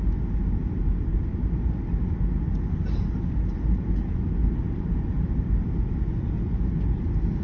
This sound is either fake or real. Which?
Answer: real